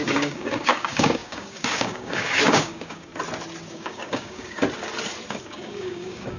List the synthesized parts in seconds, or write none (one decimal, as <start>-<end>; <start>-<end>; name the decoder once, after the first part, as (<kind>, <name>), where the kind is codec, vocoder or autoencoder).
0.0-3.1 (codec, DAC); 3.7-4.6; 5.3-6.4